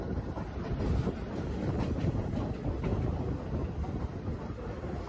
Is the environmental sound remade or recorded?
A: recorded